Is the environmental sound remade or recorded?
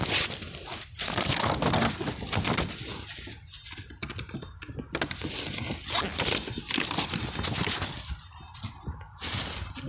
recorded